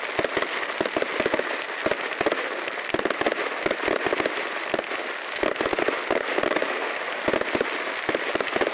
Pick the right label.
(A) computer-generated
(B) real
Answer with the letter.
B